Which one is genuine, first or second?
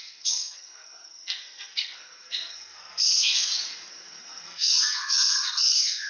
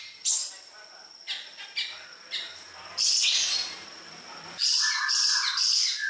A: second